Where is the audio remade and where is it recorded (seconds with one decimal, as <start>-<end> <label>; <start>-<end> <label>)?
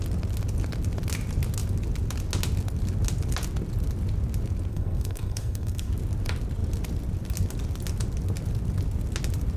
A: 0.0-4.7 recorded; 4.7-5.9 remade; 5.9-9.6 recorded